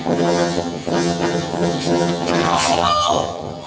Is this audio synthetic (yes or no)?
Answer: yes